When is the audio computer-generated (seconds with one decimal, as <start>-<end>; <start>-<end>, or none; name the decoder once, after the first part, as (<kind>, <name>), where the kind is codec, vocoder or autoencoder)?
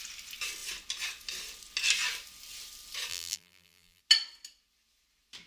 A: 3.1-4.0 (vocoder, BigVGAN v2)